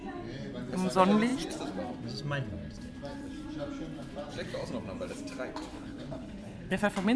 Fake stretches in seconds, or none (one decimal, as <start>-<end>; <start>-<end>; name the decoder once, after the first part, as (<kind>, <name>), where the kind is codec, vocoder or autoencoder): 5.7-6.8 (codec, HILCodec)